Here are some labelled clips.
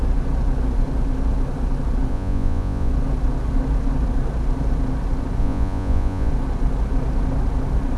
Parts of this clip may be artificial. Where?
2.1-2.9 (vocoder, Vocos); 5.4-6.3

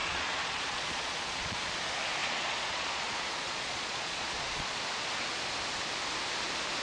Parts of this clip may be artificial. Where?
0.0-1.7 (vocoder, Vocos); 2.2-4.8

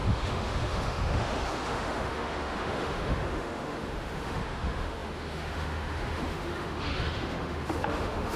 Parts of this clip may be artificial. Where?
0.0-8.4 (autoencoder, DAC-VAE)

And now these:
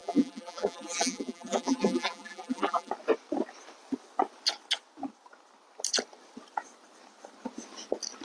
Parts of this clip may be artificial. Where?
0.0-2.9 (vocoder, BigVGAN v2)

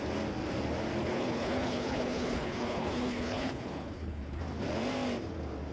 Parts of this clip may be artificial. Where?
1.0-4.4 (codec, HILCodec)

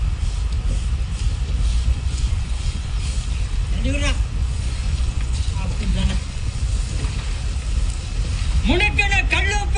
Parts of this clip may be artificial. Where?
1.7-3.0 (vocoder, Vocos); 4.4-5.5; 5.9-6.7